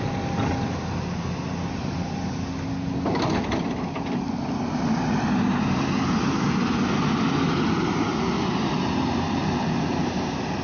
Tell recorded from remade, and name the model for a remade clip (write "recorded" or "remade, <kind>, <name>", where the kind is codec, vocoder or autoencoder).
recorded